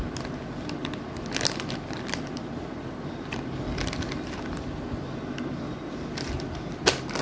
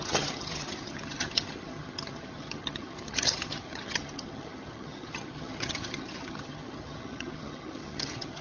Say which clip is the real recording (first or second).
first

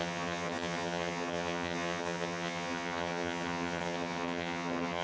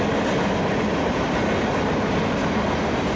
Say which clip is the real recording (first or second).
second